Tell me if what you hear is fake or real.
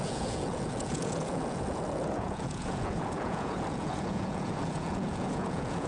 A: fake